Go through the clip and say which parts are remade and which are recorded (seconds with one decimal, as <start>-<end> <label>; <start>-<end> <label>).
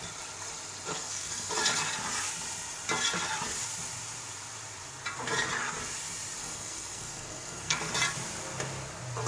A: 0.0-0.9 recorded; 0.9-1.5 remade; 1.5-6.4 recorded; 6.4-7.9 remade; 7.9-9.3 recorded